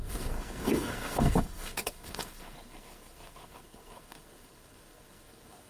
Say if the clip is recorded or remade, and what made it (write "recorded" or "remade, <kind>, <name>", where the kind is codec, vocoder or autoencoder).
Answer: remade, codec, SNAC